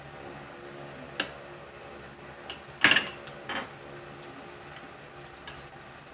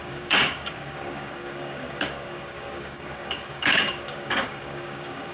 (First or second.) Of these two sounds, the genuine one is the first